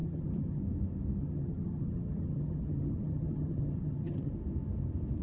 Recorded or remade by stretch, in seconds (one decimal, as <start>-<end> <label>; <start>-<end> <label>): 0.0-0.6 remade; 0.6-1.2 recorded; 1.2-4.3 remade; 4.3-5.2 recorded